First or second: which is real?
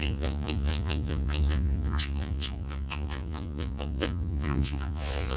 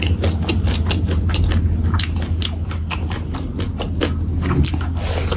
second